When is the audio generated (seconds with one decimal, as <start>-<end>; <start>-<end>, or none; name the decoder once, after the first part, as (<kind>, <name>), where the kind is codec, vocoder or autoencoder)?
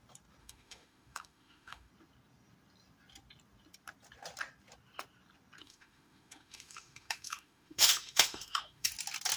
0.4-1.9 (autoencoder, DAC-VAE); 5.6-8.9